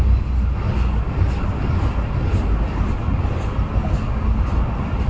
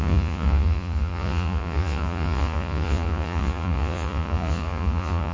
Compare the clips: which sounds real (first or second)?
first